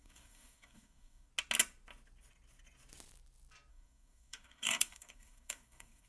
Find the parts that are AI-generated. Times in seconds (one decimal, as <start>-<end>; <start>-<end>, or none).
0.0-1.3; 3.7-6.1